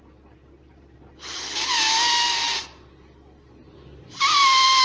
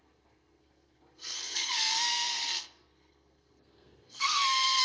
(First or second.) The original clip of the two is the first